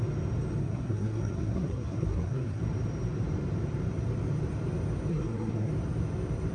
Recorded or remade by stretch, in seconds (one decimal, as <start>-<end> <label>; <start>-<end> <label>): 0.0-0.6 recorded; 0.6-2.6 remade; 2.6-5.1 recorded; 5.1-5.7 remade; 5.7-6.5 recorded